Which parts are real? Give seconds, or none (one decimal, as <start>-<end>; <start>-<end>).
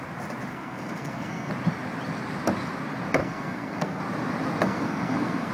0.0-0.5; 1.5-3.2; 4.0-4.6